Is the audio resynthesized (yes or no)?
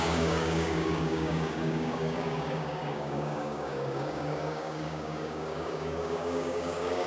yes